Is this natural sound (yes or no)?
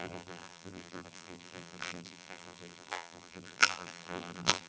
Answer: no